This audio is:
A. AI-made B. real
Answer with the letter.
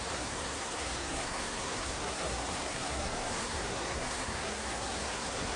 A